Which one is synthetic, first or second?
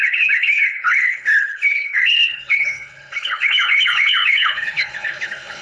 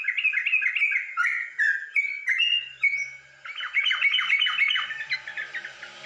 first